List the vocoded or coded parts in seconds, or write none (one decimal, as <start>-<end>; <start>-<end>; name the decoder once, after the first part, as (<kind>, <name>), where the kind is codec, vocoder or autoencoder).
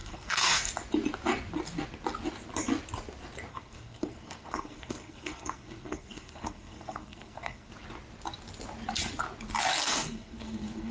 0.0-0.7 (codec, SNAC); 3.5-7.7; 9.7-10.9